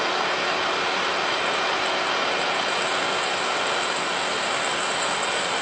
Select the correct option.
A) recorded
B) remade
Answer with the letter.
A